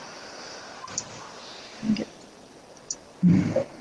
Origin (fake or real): real